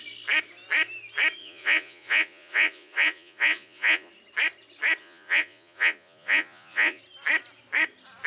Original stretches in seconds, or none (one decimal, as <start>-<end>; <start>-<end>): 0.0-1.4; 4.1-5.0; 7.0-8.3